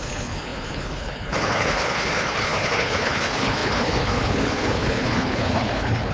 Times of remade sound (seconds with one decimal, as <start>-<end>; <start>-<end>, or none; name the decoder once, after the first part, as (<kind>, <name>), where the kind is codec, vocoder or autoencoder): 0.0-6.1 (codec, HILCodec)